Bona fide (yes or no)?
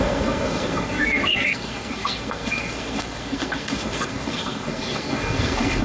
no